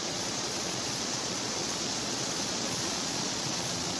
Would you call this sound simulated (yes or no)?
yes